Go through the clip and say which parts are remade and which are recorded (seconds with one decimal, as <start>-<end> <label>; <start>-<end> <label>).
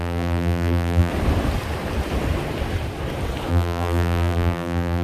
0.0-1.1 remade; 1.1-3.5 recorded; 3.5-5.0 remade